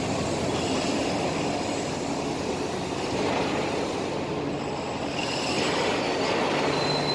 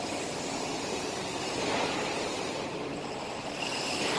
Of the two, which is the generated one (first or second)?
second